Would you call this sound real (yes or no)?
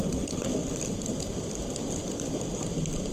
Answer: yes